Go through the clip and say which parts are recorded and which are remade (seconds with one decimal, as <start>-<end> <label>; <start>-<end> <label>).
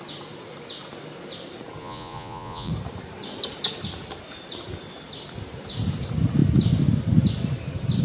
0.0-1.8 recorded; 1.8-2.7 remade; 2.7-8.0 recorded